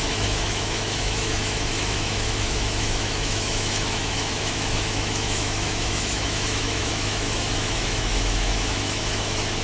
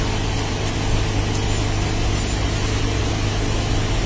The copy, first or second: first